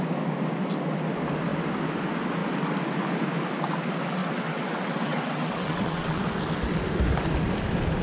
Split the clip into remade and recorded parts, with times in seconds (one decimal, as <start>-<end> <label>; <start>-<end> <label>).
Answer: 0.0-4.2 recorded; 4.2-6.2 remade; 6.2-8.0 recorded